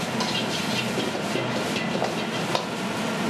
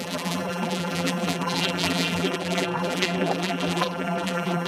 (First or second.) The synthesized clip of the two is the second